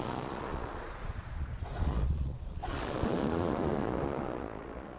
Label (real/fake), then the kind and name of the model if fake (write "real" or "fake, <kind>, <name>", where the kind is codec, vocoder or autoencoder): fake, vocoder, Vocos